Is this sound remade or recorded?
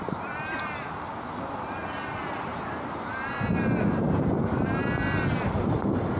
recorded